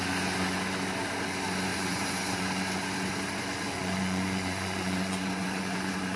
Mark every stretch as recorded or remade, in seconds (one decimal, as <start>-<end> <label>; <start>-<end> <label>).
0.0-1.7 recorded; 1.7-2.4 remade; 2.4-3.8 recorded; 3.8-6.2 remade